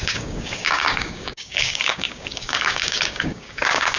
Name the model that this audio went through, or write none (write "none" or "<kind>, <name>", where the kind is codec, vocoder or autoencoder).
codec, DAC